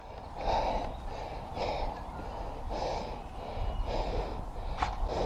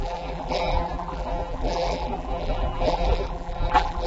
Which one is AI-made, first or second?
second